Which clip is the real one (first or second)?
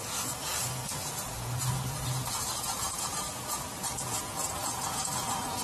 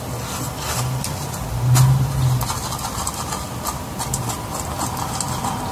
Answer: second